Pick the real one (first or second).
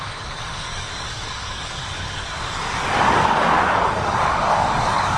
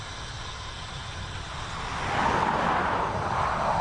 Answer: second